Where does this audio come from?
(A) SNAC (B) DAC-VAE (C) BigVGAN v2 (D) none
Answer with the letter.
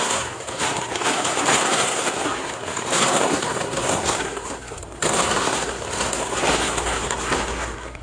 A